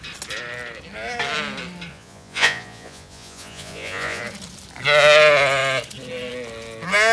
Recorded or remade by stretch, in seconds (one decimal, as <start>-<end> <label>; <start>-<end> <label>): 0.0-1.9 recorded; 1.9-4.2 remade; 4.2-7.1 recorded